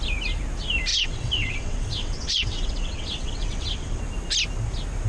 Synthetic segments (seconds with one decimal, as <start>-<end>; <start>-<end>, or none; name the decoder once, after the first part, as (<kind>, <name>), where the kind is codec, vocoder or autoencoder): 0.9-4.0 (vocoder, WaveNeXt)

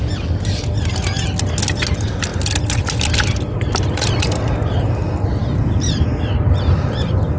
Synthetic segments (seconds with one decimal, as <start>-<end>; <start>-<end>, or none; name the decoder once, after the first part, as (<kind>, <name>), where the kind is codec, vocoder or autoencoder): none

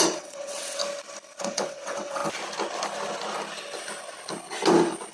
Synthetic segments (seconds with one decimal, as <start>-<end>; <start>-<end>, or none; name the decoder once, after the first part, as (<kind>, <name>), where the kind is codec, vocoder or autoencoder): 0.0-0.8 (vocoder, WaveNeXt); 1.4-2.2

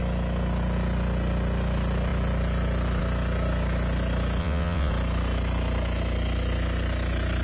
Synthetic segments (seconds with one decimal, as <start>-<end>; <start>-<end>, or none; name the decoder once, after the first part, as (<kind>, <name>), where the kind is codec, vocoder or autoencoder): 4.4-4.9 (vocoder, WaveNeXt)

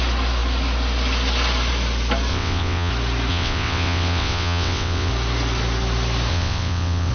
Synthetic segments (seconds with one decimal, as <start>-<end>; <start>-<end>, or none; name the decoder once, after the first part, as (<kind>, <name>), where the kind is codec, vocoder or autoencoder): 2.3-2.9 (vocoder, WaveNeXt); 3.3-5.1; 6.3-7.1

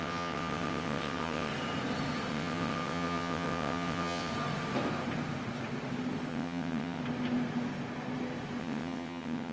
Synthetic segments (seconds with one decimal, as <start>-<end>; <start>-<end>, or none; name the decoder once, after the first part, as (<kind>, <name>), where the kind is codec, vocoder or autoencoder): 0.0-1.5 (vocoder, WaveNeXt); 2.3-4.3; 6.3-7.0; 8.6-9.5

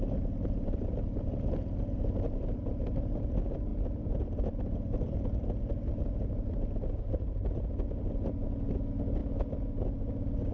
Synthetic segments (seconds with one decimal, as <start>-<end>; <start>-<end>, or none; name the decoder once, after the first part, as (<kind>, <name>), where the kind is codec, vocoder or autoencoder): none

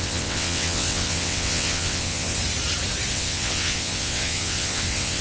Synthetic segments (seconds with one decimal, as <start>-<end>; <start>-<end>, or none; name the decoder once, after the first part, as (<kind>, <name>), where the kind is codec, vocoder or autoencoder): 0.0-2.4 (vocoder, WaveNeXt); 3.1-5.2